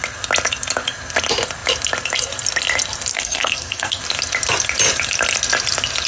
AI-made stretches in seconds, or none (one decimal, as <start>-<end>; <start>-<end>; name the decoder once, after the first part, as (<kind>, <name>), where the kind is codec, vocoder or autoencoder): 3.1-4.0 (codec, SNAC)

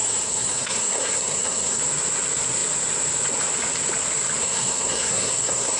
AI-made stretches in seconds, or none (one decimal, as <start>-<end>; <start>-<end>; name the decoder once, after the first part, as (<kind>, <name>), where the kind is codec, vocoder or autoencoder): 0.0-1.8 (codec, SNAC); 4.4-5.8